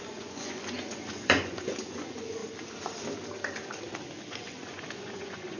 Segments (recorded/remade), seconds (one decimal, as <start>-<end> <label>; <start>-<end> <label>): 0.0-2.4 remade; 2.4-4.3 recorded; 4.3-5.6 remade

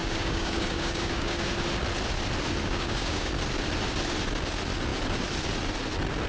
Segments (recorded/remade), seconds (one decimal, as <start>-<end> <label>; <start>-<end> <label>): 0.0-1.5 remade; 1.5-2.6 recorded; 2.6-3.3 remade; 3.3-6.3 recorded

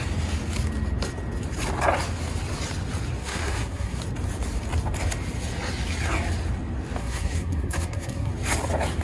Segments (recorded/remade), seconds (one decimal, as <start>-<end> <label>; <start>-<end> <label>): 0.0-3.2 recorded; 3.2-4.0 remade; 4.0-7.0 recorded; 7.0-8.3 remade; 8.3-9.0 recorded

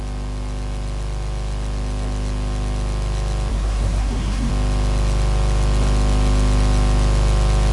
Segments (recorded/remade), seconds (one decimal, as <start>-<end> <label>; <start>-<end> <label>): 0.0-3.5 recorded; 3.5-4.5 remade; 4.5-7.7 recorded

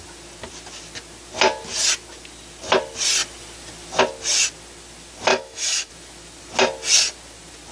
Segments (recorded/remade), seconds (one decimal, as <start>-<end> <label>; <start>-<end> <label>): 0.0-5.3 recorded; 5.3-5.9 remade; 5.9-7.7 recorded

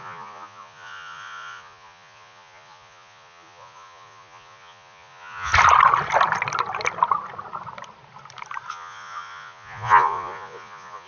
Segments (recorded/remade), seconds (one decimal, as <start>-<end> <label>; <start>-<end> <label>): 0.0-5.5 remade; 5.5-8.7 recorded; 8.7-11.1 remade

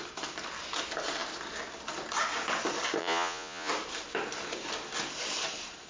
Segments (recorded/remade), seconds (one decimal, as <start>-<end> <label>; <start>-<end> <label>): 0.0-3.0 recorded; 3.0-3.7 remade; 3.7-5.9 recorded

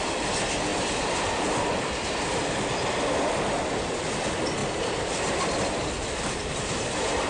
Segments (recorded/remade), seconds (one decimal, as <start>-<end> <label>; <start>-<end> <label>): 0.0-0.7 recorded; 0.7-2.7 remade; 2.7-4.6 recorded; 4.6-7.3 remade